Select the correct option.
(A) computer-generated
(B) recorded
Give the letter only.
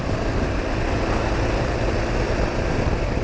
B